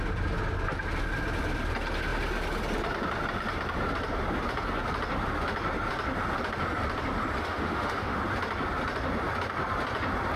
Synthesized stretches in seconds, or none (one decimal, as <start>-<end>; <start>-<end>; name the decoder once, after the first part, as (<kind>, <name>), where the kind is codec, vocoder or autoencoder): 7.4-8.2 (autoencoder, DAC-VAE)